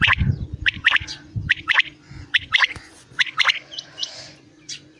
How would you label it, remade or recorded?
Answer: remade